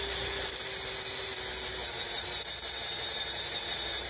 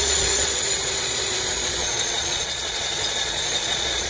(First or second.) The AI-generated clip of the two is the second